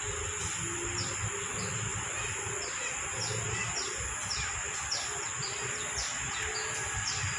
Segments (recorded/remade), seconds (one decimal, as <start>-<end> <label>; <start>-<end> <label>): 0.0-7.4 recorded